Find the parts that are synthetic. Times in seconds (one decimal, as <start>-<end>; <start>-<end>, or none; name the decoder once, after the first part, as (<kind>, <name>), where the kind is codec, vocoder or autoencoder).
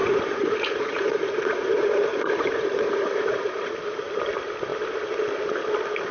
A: 0.0-3.7 (vocoder, Vocos)